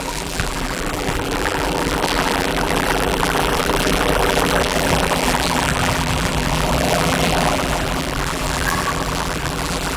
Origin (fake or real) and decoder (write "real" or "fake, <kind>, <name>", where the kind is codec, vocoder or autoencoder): fake, vocoder, BigVGAN v2